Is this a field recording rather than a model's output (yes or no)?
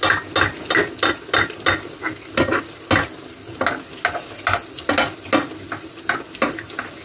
yes